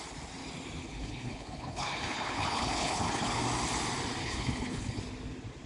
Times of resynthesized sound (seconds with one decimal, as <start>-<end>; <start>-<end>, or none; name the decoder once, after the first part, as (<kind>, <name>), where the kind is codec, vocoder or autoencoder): 0.8-3.4 (codec, HILCodec); 4.2-5.0